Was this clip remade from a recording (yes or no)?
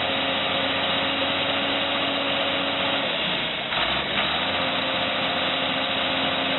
no